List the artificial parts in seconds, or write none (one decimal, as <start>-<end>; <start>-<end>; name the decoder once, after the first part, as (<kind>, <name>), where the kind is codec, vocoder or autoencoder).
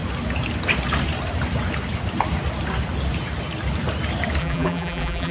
4.4-5.3 (vocoder, BigVGAN v2)